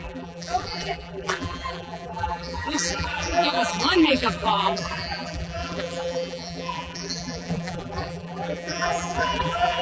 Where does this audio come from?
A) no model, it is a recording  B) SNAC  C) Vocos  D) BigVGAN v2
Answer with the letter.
D